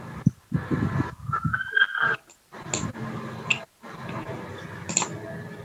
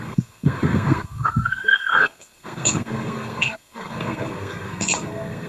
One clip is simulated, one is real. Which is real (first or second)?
first